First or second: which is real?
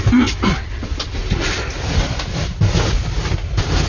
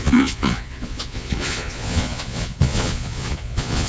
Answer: first